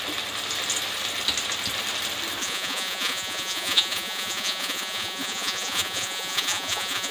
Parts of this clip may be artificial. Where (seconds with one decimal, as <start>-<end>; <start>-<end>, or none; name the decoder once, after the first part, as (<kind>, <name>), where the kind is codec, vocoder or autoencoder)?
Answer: 2.4-7.1 (vocoder, Vocos)